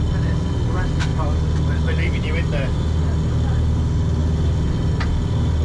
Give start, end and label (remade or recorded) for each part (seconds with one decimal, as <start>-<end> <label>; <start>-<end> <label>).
0.0-5.6 recorded

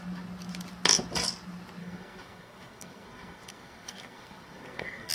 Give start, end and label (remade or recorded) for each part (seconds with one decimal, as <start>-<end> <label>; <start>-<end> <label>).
0.0-1.8 recorded; 1.8-5.1 remade